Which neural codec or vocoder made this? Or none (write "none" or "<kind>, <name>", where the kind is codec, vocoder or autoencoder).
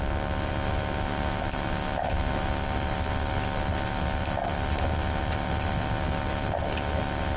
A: none